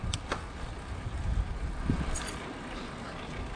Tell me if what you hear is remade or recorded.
recorded